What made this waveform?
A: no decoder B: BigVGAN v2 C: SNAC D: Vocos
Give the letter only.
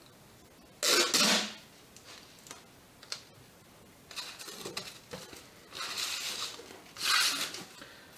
A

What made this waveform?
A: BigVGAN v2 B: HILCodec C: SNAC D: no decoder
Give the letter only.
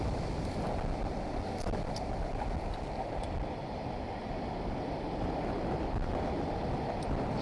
D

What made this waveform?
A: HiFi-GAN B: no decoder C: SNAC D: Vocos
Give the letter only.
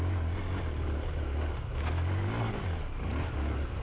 B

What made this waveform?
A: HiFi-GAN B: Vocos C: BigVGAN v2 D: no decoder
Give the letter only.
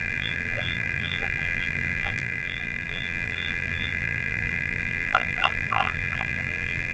C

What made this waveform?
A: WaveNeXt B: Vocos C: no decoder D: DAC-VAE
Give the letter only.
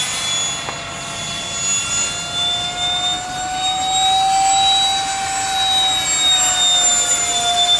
C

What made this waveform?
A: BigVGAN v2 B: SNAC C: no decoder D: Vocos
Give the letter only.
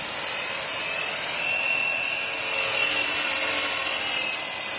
C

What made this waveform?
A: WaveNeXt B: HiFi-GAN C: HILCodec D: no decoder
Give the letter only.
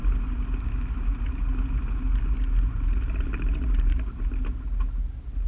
D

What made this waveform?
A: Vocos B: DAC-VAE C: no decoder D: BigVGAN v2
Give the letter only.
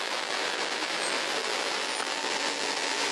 D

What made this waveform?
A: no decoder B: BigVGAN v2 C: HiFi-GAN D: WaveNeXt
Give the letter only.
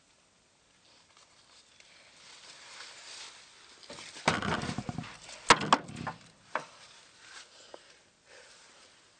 A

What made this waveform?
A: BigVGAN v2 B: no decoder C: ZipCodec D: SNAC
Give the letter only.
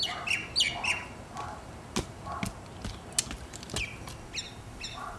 B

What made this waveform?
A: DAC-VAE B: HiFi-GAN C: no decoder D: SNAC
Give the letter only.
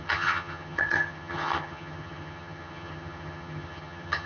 B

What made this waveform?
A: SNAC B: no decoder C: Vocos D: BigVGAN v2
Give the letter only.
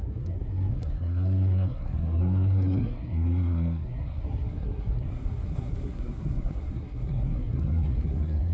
A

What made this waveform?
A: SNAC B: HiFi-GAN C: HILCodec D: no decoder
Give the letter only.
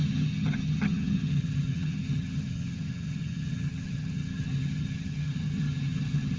B